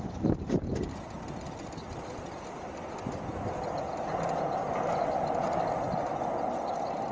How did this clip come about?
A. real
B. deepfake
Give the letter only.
A